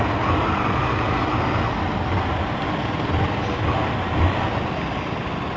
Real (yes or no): yes